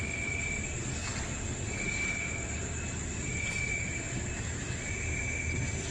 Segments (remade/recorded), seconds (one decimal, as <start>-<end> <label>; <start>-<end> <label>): 0.0-5.9 recorded

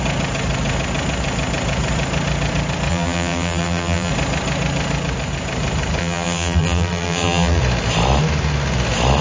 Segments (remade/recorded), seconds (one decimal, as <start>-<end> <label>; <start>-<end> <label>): 0.0-2.9 recorded; 2.9-4.1 remade; 4.1-6.0 recorded; 6.0-7.6 remade; 7.6-9.2 recorded

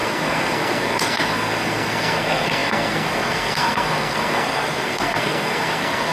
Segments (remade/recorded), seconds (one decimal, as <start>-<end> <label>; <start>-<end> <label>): 0.0-6.1 remade

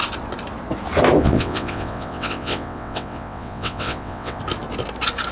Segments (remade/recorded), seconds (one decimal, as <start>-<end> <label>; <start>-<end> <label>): 0.0-1.2 recorded; 1.2-4.4 remade; 4.4-5.3 recorded

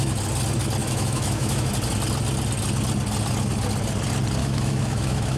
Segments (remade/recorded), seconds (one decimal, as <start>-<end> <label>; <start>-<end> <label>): 0.0-0.8 recorded; 0.8-1.7 remade; 1.7-4.4 recorded; 4.4-5.4 remade

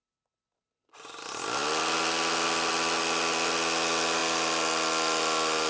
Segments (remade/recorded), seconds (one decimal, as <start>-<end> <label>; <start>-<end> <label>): 0.0-5.7 recorded